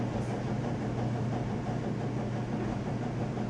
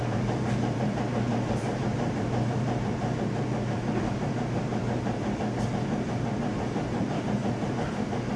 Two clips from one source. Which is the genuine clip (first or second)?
first